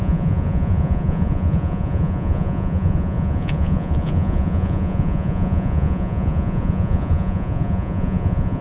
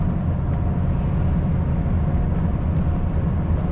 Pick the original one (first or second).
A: second